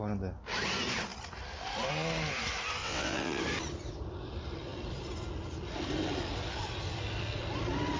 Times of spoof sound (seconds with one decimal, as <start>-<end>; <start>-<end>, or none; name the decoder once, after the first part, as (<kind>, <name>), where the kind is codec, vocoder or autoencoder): 2.8-3.4 (vocoder, WaveNeXt)